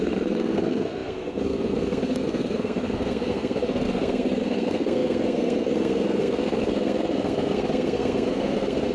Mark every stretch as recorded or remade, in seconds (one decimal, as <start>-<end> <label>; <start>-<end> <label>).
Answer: 0.0-8.9 remade